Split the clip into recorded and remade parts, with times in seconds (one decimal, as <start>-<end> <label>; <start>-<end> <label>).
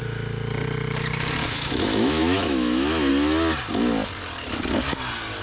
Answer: 0.0-1.4 recorded; 1.4-3.1 remade; 3.1-5.4 recorded